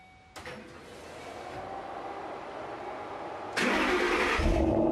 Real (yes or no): yes